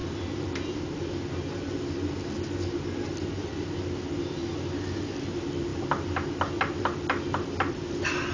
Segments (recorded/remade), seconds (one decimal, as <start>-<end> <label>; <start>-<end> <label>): 0.0-8.3 recorded